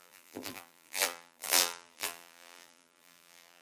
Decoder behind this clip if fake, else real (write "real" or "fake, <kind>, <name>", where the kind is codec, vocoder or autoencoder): fake, vocoder, BigVGAN v2